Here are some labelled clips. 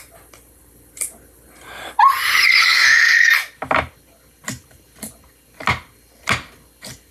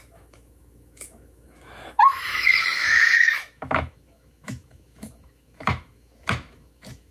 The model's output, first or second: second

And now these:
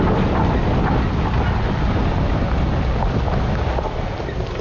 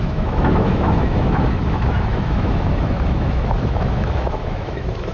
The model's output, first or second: second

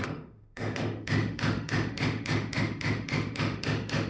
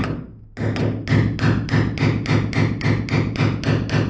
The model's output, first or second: first